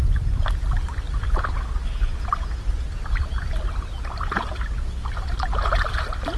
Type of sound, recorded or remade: recorded